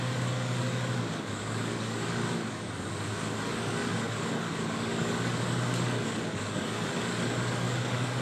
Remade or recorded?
remade